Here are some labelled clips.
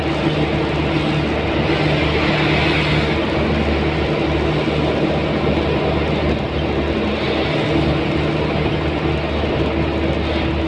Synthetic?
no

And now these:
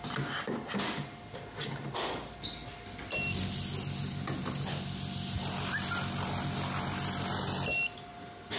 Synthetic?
no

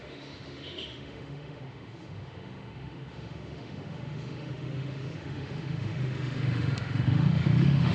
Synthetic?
yes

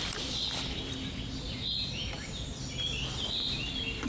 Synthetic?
no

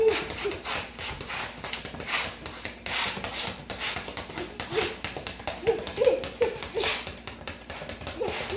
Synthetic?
no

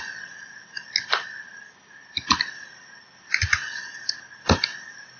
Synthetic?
no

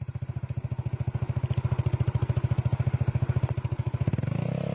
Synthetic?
no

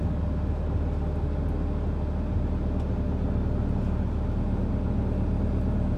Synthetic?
no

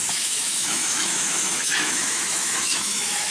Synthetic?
yes